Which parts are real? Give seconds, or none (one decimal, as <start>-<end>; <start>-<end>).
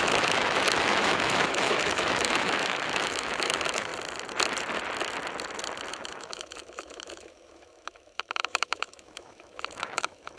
3.9-5.9